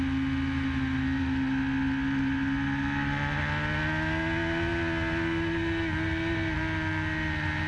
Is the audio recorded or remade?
recorded